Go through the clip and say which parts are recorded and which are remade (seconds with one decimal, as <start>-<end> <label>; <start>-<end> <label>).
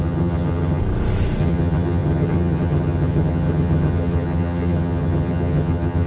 0.0-0.8 remade; 0.8-1.4 recorded; 1.4-6.1 remade